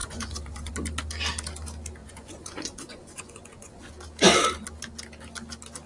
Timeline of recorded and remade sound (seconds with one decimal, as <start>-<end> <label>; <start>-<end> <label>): 0.0-0.7 remade; 0.7-2.0 recorded; 2.0-3.9 remade; 3.9-5.9 recorded